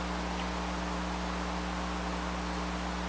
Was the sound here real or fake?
real